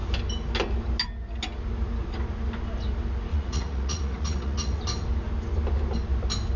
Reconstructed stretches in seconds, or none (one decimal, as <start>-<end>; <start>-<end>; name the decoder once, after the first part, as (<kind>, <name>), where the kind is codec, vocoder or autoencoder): 3.3-4.8 (vocoder, Vocos)

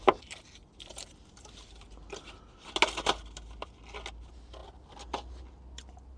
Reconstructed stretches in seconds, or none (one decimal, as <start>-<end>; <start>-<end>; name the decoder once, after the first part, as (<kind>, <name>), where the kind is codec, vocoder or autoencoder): none

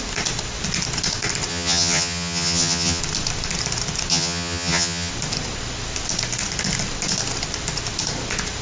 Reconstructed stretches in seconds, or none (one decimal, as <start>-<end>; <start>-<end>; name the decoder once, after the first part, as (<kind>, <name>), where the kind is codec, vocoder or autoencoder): 1.5-3.0 (vocoder, HiFi-GAN); 4.1-5.1

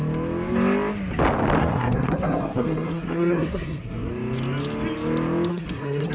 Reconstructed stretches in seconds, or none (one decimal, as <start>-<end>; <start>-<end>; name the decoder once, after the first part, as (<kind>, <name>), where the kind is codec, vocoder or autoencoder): 1.6-4.1 (codec, SNAC); 5.5-6.1

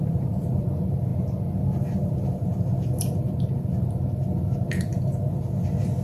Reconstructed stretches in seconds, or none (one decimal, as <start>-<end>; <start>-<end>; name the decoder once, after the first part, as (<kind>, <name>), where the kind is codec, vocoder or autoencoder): 0.0-6.0 (vocoder, BigVGAN v2)

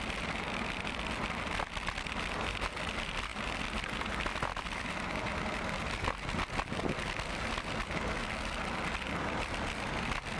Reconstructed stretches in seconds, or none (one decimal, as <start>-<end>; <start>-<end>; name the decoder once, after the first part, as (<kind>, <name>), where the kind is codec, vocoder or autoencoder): none